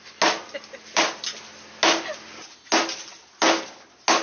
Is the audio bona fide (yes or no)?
yes